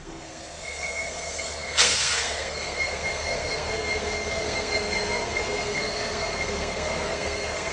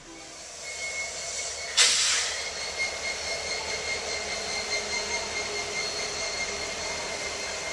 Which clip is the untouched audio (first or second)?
second